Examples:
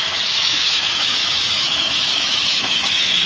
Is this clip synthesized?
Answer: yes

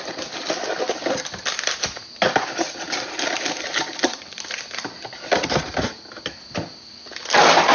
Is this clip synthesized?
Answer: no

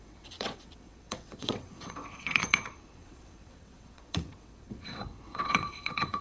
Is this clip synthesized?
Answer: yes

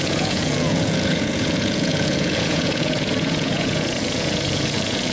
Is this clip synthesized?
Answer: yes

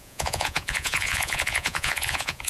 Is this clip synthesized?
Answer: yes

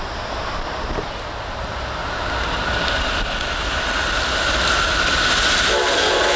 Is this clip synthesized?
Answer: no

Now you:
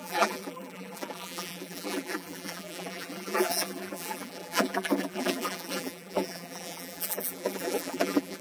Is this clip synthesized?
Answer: yes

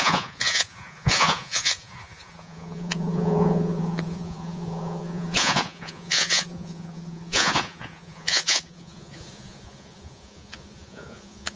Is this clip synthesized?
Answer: yes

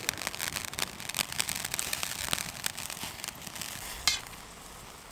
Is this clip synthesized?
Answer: no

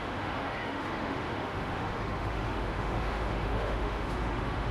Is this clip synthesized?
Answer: yes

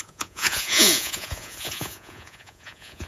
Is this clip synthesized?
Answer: yes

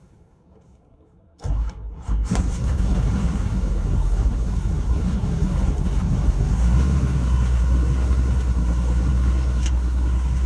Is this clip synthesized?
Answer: yes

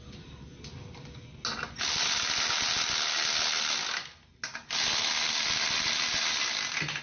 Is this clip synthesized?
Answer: no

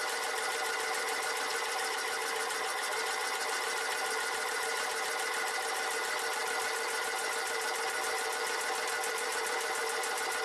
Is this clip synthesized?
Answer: no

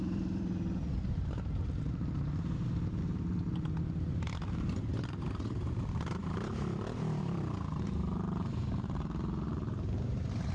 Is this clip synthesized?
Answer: yes